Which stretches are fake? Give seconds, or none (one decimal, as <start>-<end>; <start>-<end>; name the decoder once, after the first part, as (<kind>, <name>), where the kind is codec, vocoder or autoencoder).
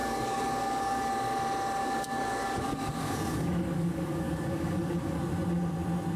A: 0.0-1.1 (codec, DAC); 1.8-5.2